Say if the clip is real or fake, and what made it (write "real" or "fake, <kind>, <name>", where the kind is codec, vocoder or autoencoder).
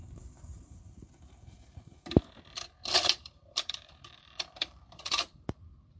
fake, vocoder, BigVGAN v2